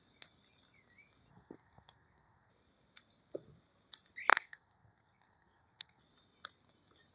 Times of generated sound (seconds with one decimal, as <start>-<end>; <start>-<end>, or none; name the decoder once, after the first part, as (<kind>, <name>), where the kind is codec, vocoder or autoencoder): 1.3-2.5 (codec, SNAC); 4.3-6.0